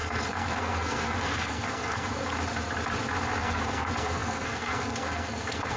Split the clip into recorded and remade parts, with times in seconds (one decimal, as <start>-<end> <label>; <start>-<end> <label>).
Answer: 0.0-2.1 remade; 2.1-3.4 recorded; 3.4-5.8 remade

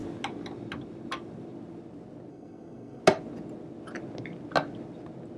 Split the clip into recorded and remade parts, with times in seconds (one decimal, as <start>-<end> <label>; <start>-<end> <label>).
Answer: 0.0-2.3 recorded; 2.3-3.0 remade; 3.0-5.4 recorded

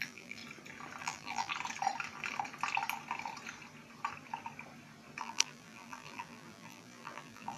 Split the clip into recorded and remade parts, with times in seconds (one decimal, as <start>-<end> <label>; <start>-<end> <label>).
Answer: 0.0-0.4 remade; 0.4-1.0 recorded; 1.0-1.5 remade; 1.5-5.2 recorded; 5.2-7.6 remade

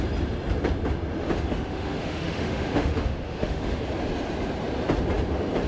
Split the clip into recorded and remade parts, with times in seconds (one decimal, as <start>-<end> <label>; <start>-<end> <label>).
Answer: 0.0-1.5 recorded; 1.5-3.8 remade; 3.8-5.7 recorded

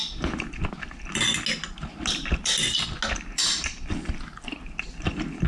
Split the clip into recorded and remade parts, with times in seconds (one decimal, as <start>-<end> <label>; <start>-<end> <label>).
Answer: 0.0-5.5 recorded

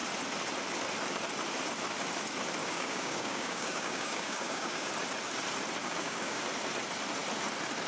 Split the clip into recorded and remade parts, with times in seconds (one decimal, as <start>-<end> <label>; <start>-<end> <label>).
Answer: 0.0-2.6 recorded; 2.6-4.9 remade; 4.9-5.8 recorded; 5.8-6.4 remade; 6.4-7.9 recorded

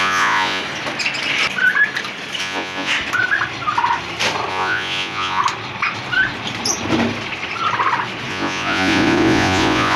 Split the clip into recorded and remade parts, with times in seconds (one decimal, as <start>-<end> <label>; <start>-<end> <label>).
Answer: 0.0-0.6 remade; 0.6-2.4 recorded; 2.4-2.9 remade; 2.9-4.5 recorded; 4.5-5.4 remade; 5.4-8.3 recorded; 8.3-10.0 remade